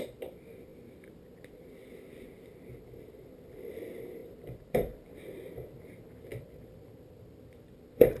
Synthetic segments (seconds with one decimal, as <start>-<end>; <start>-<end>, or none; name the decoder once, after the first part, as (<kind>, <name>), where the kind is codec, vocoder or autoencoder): 0.7-1.2 (vocoder, BigVGAN v2); 4.2-5.3; 6.3-8.2